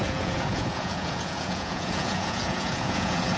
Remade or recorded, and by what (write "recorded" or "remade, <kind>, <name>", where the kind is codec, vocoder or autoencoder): remade, vocoder, Vocos